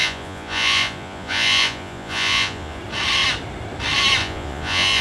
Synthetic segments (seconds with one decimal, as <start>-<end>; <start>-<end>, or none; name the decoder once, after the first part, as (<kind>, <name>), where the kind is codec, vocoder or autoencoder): 0.0-2.8 (vocoder, Vocos); 4.2-5.0